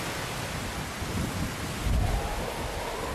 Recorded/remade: recorded